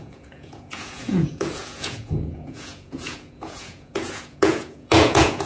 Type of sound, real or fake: fake